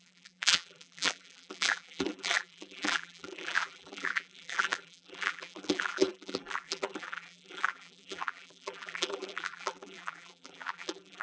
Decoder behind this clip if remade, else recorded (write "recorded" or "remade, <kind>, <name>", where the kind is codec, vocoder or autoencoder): remade, vocoder, BigVGAN v2